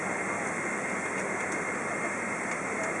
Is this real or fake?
real